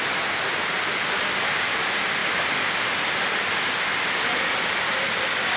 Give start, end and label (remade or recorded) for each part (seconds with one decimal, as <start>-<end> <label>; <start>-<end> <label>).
0.0-5.6 recorded